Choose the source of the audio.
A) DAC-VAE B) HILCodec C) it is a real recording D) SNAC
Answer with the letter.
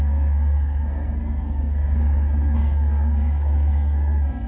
D